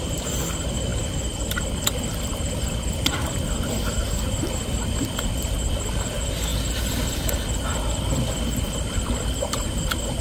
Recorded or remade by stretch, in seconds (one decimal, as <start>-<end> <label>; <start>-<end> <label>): 0.0-10.2 recorded